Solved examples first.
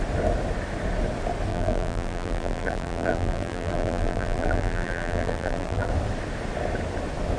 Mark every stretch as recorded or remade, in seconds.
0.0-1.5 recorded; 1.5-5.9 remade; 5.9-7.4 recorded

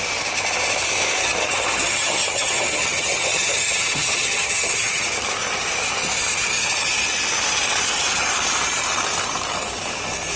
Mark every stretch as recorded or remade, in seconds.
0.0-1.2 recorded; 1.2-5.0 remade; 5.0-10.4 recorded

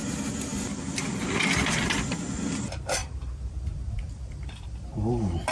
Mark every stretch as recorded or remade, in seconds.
0.0-0.5 recorded; 0.5-1.3 remade; 1.3-3.0 recorded; 3.0-4.1 remade; 4.1-5.5 recorded